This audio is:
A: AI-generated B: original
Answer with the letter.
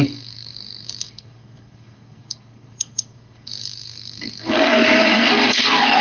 A